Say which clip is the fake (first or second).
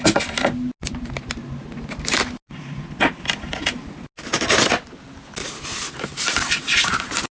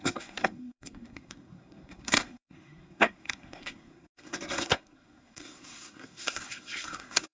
second